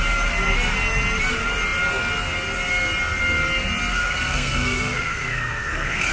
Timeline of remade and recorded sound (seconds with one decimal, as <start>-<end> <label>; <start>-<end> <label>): 0.0-3.9 recorded; 3.9-6.1 remade